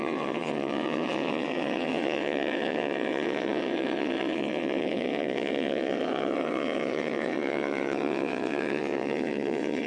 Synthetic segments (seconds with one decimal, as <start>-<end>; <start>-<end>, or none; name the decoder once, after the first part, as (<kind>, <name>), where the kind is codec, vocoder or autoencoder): 0.0-9.9 (vocoder, WaveNeXt)

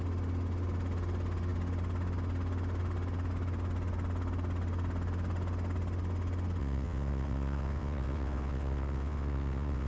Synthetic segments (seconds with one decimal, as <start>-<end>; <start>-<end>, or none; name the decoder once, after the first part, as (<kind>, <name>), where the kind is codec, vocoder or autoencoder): 6.6-9.9 (vocoder, WaveNeXt)

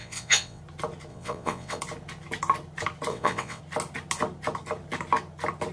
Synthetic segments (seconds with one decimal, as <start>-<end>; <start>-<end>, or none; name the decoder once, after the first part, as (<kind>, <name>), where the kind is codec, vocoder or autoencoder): 0.0-0.6 (vocoder, WaveNeXt); 1.1-1.8; 3.1-3.6

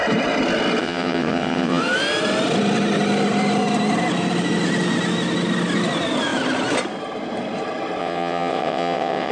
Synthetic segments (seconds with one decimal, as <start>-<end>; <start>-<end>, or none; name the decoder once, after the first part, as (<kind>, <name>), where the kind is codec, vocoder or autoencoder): 0.8-1.8 (vocoder, WaveNeXt); 8.0-9.3

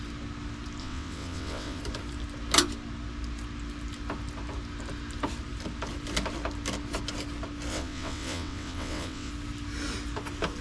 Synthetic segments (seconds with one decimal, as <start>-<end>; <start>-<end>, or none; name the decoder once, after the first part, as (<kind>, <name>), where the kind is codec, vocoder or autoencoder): 0.8-1.8 (vocoder, WaveNeXt); 7.7-9.3

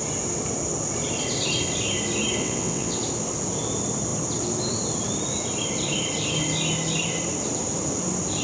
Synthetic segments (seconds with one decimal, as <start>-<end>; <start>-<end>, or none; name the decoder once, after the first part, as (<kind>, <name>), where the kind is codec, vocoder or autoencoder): 2.4-3.0 (vocoder, WaveNeXt)

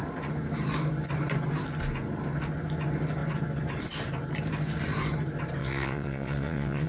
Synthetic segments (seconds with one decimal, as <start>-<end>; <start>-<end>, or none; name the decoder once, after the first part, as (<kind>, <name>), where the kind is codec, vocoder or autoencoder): 5.6-6.9 (vocoder, WaveNeXt)

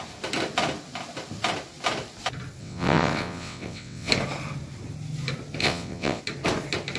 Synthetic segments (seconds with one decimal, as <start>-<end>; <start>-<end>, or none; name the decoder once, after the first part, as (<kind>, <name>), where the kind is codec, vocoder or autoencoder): 2.6-4.1 (vocoder, WaveNeXt); 5.6-6.2